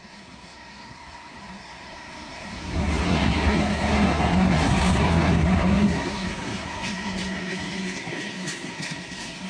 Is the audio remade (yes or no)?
yes